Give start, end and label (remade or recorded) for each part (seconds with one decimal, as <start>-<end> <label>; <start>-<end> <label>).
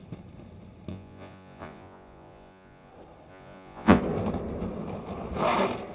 0.0-0.9 recorded; 0.9-2.9 remade; 2.9-3.3 recorded; 3.3-4.0 remade; 4.0-5.9 recorded